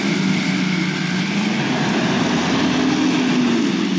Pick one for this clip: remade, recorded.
recorded